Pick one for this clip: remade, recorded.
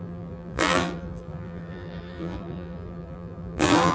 remade